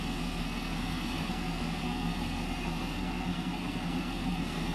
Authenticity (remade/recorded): remade